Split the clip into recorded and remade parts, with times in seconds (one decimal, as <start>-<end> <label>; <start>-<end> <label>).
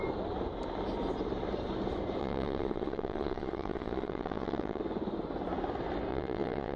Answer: 0.0-2.2 recorded; 2.2-4.8 remade; 4.8-6.1 recorded; 6.1-6.8 remade